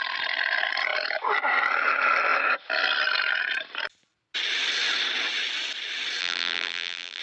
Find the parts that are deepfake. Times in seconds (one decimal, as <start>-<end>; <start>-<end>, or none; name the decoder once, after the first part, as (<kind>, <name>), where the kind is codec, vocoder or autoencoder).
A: 6.2-7.2 (vocoder, BigVGAN v2)